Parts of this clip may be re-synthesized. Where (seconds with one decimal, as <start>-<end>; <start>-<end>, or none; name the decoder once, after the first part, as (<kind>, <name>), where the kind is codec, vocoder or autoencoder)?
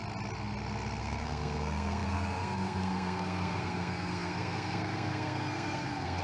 1.0-6.2 (codec, SNAC)